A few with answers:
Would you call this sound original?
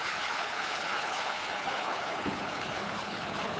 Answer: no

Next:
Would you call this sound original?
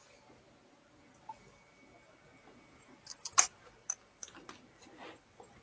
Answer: yes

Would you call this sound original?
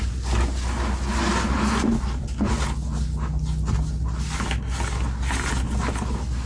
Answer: yes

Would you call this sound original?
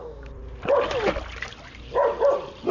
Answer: yes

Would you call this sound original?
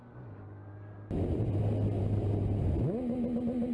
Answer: yes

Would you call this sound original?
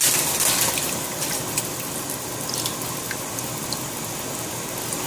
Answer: yes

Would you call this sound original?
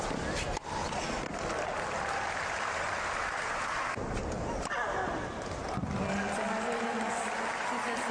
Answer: yes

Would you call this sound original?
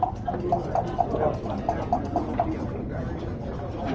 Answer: yes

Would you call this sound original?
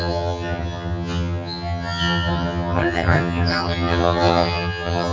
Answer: no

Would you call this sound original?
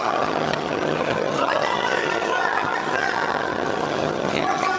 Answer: no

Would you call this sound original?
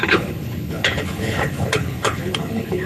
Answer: no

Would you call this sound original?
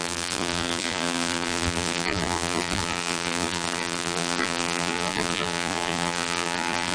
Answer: no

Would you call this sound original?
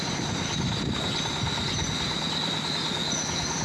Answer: yes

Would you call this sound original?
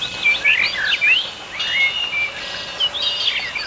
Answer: yes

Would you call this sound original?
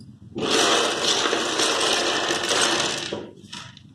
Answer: yes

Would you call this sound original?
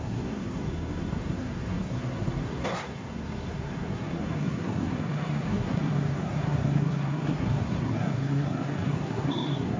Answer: no